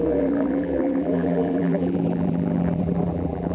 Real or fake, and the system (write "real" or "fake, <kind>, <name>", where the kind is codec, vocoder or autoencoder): fake, vocoder, BigVGAN v2